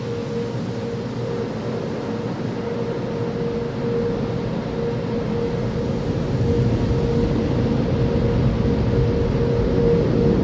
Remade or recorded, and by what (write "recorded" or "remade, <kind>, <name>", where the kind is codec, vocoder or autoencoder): recorded